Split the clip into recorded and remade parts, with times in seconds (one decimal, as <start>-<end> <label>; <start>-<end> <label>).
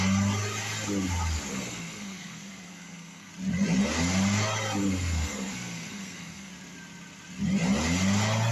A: 0.0-1.5 recorded; 1.5-3.3 remade; 3.3-4.8 recorded; 4.8-6.5 remade; 6.5-8.5 recorded